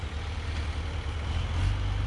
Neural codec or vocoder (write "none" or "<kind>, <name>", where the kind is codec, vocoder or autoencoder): none